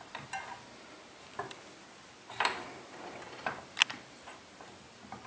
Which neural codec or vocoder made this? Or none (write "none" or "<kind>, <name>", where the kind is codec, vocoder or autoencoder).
none